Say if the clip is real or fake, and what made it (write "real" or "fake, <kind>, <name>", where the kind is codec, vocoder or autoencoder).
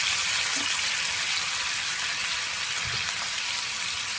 real